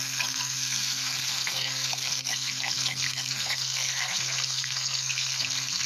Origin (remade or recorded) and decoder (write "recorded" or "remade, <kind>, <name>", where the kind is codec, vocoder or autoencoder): remade, codec, SNAC